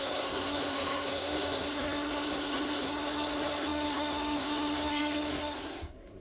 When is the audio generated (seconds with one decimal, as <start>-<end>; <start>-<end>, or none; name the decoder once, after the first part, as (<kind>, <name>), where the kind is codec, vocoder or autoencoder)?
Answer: 0.0-6.2 (codec, SNAC)